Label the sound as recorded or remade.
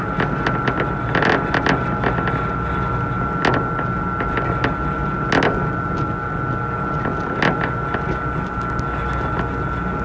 recorded